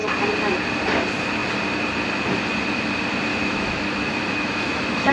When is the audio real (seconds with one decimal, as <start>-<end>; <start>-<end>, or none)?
0.0-3.3